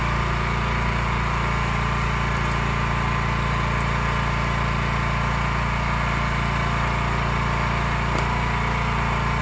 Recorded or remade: recorded